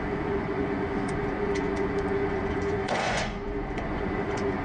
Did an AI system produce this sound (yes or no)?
yes